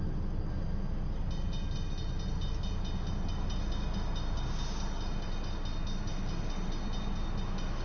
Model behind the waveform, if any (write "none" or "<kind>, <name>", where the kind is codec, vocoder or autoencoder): none